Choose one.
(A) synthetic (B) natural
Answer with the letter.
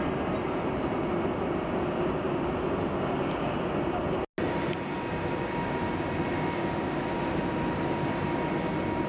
B